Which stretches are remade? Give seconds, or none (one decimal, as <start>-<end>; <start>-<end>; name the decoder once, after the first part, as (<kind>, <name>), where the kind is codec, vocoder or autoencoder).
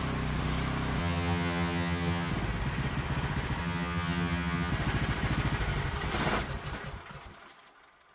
1.0-2.3 (vocoder, HiFi-GAN); 3.6-4.7